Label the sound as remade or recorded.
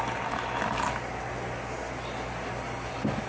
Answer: recorded